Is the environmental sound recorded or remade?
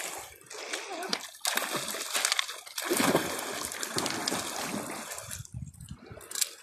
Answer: recorded